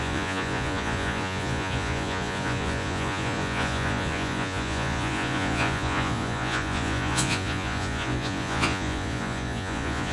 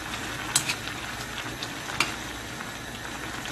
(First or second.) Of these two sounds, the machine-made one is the first